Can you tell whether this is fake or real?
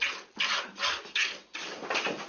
real